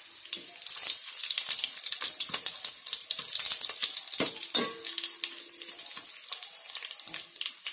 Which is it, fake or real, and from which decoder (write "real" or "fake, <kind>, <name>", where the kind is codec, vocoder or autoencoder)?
real